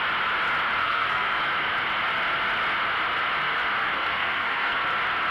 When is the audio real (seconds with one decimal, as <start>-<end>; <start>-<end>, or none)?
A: 0.0-0.8; 1.4-3.8; 4.8-5.3